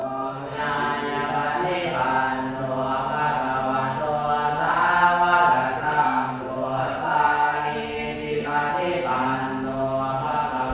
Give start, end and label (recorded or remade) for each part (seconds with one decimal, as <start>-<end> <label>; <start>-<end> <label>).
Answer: 0.0-0.6 remade; 0.6-5.8 recorded; 5.8-8.7 remade; 8.7-10.7 recorded